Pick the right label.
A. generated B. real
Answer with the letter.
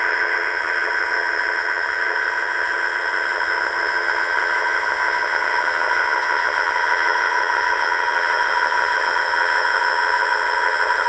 A